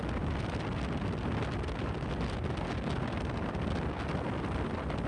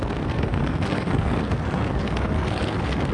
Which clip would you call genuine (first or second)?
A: first